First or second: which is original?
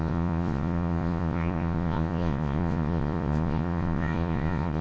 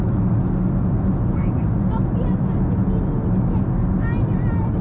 second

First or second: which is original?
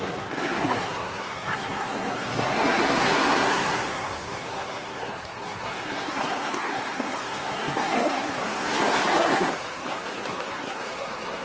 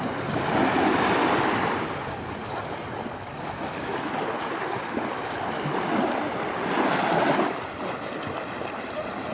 second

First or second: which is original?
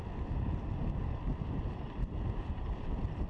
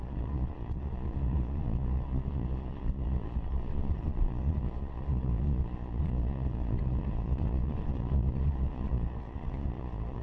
first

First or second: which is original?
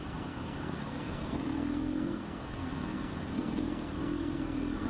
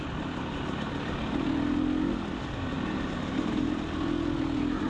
second